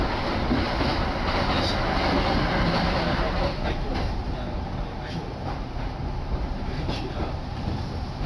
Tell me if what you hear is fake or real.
real